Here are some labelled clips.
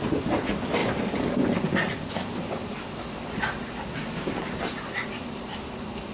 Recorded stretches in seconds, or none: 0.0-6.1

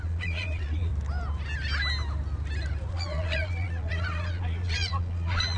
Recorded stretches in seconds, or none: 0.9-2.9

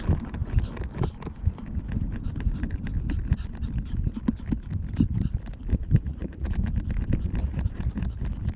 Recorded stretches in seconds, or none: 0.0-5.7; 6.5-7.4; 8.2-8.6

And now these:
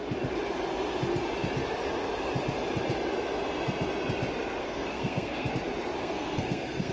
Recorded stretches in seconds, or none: 0.0-4.6; 5.5-6.0